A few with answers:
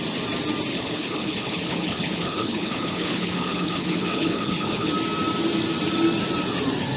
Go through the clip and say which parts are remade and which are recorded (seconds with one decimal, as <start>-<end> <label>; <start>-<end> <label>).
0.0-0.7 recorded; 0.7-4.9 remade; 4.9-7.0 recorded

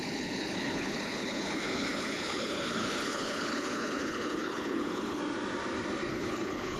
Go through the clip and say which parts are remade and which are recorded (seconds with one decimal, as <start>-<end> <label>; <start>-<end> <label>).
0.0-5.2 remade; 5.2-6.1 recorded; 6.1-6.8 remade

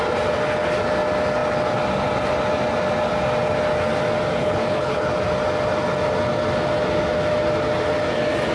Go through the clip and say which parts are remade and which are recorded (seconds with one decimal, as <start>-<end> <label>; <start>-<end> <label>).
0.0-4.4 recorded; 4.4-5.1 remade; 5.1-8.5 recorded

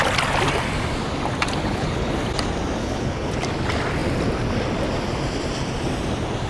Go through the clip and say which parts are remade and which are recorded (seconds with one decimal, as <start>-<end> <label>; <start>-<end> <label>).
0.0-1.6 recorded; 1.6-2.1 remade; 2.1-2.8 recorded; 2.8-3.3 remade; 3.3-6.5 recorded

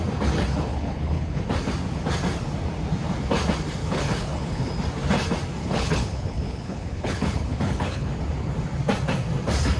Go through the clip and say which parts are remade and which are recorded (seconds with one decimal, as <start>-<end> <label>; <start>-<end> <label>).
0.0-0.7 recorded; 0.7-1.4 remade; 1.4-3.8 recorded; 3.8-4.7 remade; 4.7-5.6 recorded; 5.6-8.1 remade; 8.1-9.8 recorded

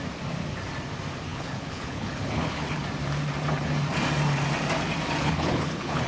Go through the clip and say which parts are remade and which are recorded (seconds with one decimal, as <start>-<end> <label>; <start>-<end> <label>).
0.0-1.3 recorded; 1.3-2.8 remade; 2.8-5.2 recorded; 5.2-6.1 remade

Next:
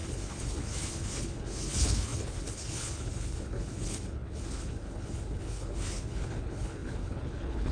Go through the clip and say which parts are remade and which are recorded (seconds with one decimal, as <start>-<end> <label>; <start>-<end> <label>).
0.0-7.7 remade

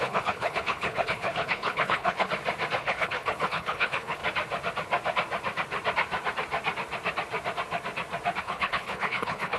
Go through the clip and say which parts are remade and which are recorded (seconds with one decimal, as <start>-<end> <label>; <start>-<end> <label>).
0.0-2.3 remade; 2.3-2.8 recorded; 2.8-4.2 remade; 4.2-8.4 recorded; 8.4-9.6 remade